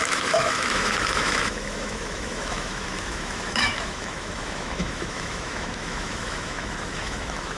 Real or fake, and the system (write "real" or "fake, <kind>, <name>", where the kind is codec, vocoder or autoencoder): fake, autoencoder, DAC-VAE